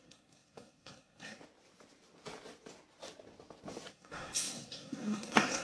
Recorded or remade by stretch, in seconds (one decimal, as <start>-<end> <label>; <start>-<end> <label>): 0.0-1.4 remade; 1.4-3.9 recorded; 3.9-5.6 remade